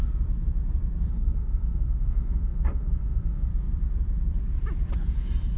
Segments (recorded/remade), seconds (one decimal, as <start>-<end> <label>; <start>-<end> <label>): 0.0-1.1 recorded; 1.1-3.5 remade; 3.5-5.6 recorded